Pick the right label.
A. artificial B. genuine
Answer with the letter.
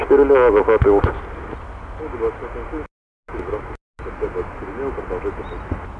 B